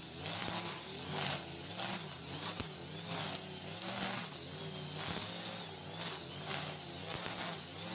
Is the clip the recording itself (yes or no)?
yes